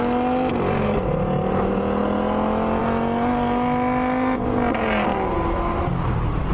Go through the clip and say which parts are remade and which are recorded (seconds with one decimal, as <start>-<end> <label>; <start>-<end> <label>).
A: 0.0-6.5 recorded